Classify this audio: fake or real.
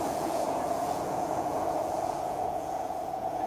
fake